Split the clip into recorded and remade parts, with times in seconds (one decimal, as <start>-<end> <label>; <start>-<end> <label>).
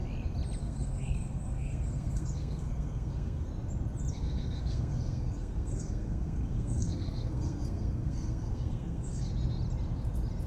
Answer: 0.0-0.6 recorded; 0.6-3.5 remade; 3.5-4.1 recorded; 4.1-9.3 remade; 9.3-10.5 recorded